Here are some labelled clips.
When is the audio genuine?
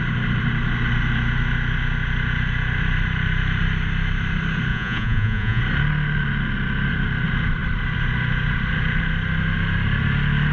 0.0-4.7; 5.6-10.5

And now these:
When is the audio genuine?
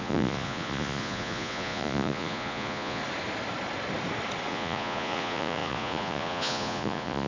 3.0-4.5